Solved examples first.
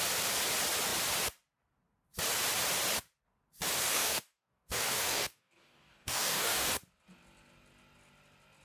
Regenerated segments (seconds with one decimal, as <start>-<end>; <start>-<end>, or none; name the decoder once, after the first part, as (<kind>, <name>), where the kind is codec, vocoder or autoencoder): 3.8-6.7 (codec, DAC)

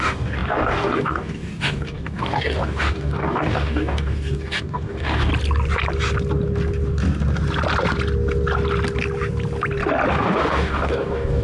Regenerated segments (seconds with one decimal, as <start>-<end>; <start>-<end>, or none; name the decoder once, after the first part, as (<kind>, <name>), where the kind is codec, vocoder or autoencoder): 0.0-5.3 (codec, DAC); 10.1-11.4

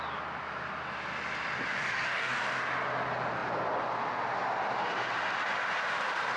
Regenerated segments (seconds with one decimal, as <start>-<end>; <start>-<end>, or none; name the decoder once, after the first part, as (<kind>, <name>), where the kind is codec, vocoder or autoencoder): 1.8-2.6 (codec, DAC)

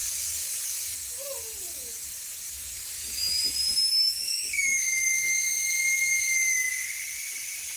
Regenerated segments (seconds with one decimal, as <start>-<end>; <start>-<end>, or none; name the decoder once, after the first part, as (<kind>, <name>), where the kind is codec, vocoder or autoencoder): 0.0-3.3 (codec, DAC); 3.9-6.7

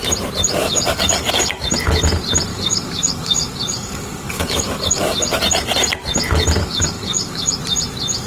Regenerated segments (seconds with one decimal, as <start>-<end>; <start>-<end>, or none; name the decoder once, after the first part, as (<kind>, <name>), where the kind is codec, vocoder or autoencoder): 0.6-1.6 (codec, DAC); 2.5-5.4; 6.6-7.6

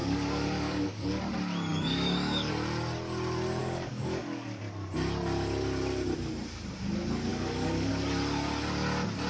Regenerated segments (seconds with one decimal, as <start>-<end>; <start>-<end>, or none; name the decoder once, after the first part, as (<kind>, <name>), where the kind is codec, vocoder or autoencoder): 0.0-1.2 (codec, DAC); 1.7-2.5; 3.6-4.6; 7.3-7.9

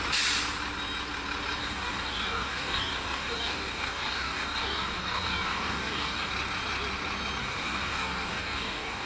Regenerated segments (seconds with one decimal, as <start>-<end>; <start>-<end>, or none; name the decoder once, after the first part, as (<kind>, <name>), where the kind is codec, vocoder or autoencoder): 1.6-6.3 (codec, DAC); 7.4-9.1